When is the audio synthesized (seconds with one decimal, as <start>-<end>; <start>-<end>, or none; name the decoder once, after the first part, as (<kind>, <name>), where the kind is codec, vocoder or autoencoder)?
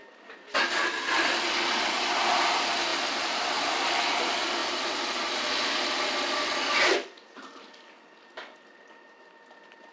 none